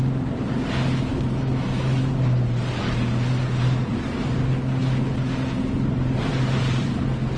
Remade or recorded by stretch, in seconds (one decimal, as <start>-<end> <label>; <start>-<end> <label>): 0.0-1.1 recorded; 1.1-2.1 remade; 2.1-7.4 recorded